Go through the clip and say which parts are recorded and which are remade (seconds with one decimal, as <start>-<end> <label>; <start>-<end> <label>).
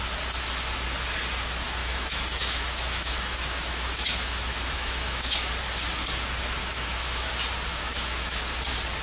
0.0-1.8 recorded; 1.8-5.5 remade; 5.5-6.6 recorded; 6.6-7.3 remade; 7.3-7.7 recorded; 7.7-8.4 remade; 8.4-9.0 recorded